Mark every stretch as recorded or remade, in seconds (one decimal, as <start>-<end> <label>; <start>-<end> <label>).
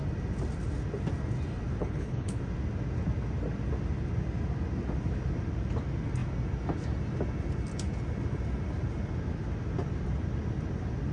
0.0-1.8 recorded; 1.8-2.4 remade; 2.4-11.1 recorded